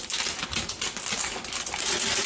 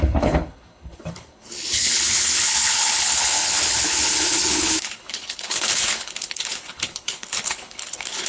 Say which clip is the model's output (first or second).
second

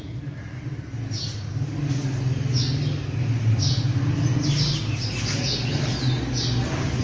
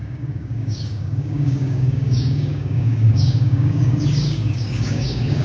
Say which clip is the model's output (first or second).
second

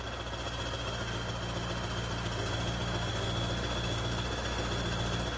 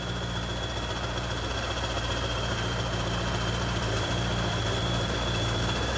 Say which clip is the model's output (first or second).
second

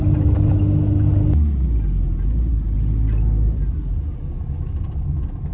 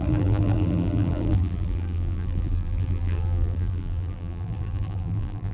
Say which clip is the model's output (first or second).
second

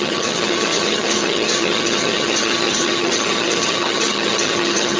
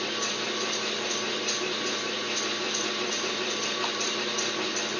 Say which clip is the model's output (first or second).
first